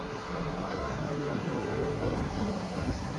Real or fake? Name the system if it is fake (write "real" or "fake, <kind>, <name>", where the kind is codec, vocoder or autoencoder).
fake, codec, SNAC